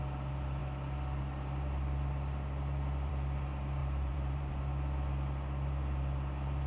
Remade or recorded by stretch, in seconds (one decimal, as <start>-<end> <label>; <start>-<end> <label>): 0.0-3.8 recorded; 3.8-4.5 remade; 4.5-6.7 recorded